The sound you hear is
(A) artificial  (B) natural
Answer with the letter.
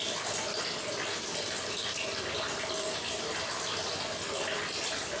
B